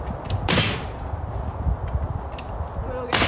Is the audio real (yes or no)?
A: yes